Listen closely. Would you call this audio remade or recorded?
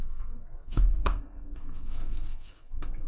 remade